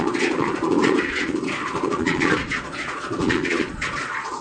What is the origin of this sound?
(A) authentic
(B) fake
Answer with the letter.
B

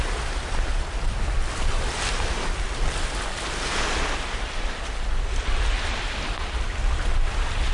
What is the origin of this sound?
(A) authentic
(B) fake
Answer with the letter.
A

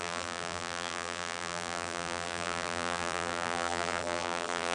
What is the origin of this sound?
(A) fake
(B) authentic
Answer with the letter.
A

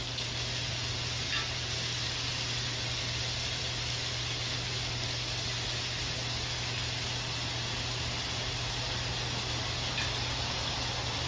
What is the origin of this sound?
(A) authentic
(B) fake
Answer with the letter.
A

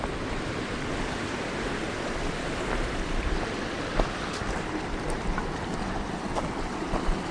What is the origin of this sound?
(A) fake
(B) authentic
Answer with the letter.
B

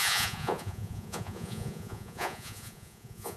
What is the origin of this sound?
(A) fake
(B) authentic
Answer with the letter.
A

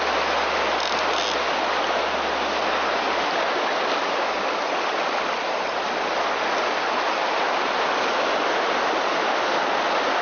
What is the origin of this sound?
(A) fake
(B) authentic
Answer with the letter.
B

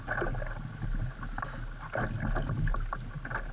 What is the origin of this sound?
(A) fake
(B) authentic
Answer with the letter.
B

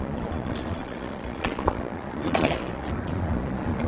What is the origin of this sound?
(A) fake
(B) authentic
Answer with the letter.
A